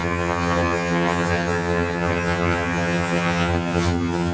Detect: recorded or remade remade